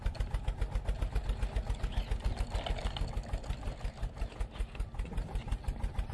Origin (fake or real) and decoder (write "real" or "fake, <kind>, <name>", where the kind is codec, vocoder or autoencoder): real